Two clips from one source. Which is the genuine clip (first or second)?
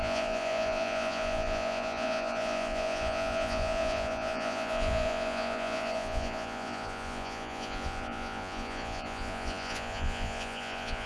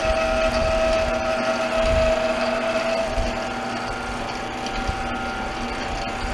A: second